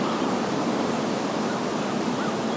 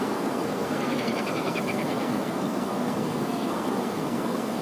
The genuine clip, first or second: first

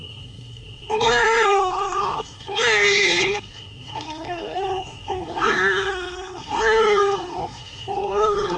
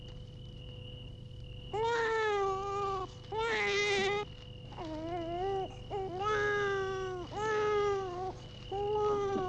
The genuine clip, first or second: second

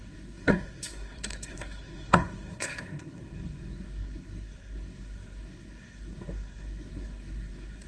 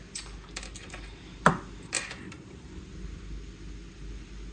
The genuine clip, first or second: second